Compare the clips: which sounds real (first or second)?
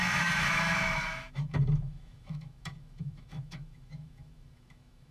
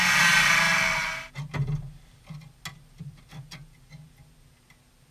second